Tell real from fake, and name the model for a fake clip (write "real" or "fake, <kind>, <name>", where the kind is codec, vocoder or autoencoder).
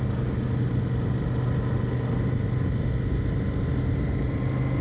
real